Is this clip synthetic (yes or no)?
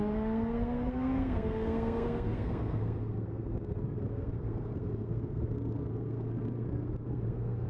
yes